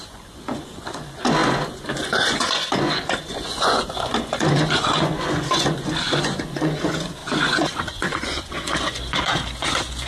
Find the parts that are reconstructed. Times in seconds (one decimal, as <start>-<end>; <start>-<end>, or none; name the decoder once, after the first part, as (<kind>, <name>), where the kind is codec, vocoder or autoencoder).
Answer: 0.0-10.1 (vocoder, Vocos)